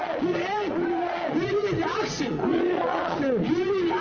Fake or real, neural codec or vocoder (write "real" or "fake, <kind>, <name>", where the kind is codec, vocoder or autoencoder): fake, vocoder, Vocos